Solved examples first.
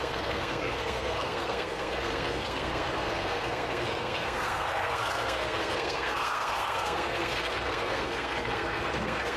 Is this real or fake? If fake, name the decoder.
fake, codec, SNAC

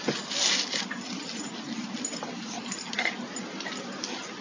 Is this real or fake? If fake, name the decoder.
real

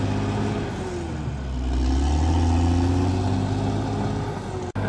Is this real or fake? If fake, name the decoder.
real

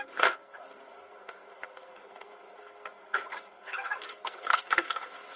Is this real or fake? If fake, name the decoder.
fake, codec, SNAC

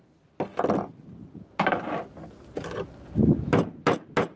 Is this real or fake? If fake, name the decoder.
real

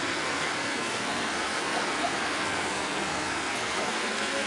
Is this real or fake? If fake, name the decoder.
fake, codec, SNAC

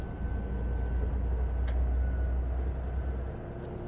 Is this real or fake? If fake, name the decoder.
real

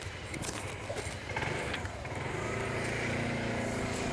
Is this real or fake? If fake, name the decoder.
real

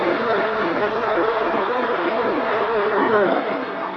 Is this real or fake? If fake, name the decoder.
fake, codec, SNAC